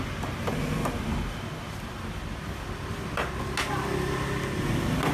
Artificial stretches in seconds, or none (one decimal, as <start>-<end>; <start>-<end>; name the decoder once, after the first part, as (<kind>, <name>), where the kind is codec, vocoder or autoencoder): none